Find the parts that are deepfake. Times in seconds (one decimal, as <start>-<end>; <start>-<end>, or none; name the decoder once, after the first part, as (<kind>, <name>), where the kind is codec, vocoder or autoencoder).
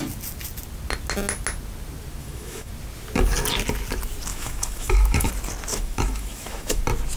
2.2-2.7 (autoencoder, DAC-VAE); 4.3-5.3; 5.7-6.8